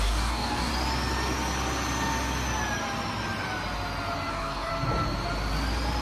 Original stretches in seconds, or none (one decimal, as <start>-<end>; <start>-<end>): 0.7-4.3; 4.7-6.0